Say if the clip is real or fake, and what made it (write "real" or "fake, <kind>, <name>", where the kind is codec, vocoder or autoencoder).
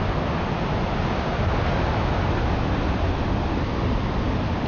real